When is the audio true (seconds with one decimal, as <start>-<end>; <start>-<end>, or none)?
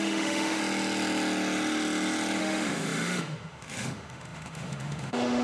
0.6-2.4